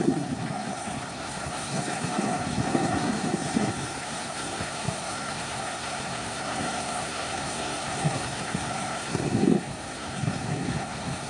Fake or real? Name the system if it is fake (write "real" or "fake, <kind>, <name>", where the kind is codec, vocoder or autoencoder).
fake, codec, SNAC